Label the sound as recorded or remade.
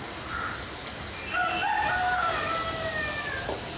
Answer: recorded